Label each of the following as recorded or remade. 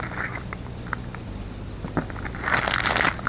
recorded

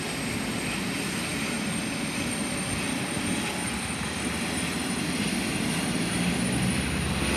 recorded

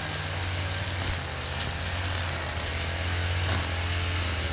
recorded